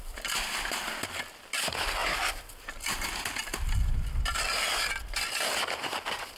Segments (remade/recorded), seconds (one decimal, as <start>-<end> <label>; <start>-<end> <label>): 0.0-2.0 remade; 2.0-5.8 recorded; 5.8-6.4 remade